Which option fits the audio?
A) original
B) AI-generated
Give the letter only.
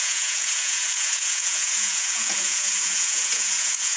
B